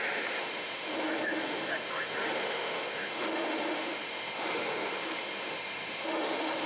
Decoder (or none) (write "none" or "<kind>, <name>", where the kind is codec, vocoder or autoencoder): autoencoder, DAC-VAE